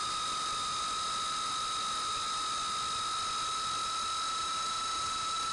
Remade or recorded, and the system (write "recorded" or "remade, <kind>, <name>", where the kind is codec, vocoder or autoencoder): recorded